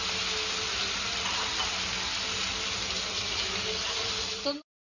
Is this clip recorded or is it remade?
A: recorded